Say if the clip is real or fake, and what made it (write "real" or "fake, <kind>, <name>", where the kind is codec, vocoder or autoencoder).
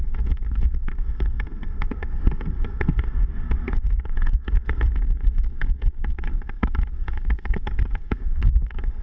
fake, codec, SNAC